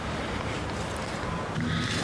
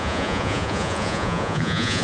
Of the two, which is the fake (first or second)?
second